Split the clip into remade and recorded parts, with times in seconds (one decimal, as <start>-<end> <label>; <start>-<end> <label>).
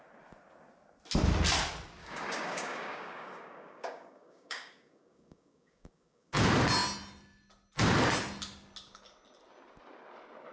0.0-2.0 recorded; 2.0-6.3 remade; 6.3-10.5 recorded